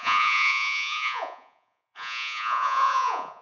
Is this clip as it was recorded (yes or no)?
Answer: no